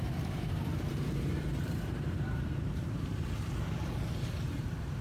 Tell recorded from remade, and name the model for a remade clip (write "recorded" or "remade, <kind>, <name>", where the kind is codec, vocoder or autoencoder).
remade, vocoder, BigVGAN v2